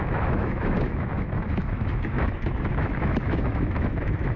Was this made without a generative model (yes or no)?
no